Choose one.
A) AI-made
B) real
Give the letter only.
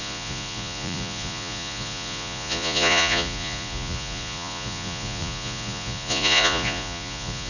A